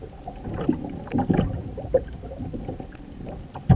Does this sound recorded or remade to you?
remade